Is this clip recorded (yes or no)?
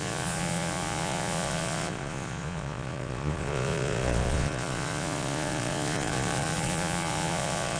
no